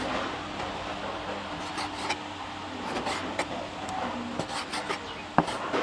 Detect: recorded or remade recorded